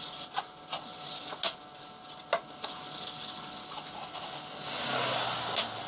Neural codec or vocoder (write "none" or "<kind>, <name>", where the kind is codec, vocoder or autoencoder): none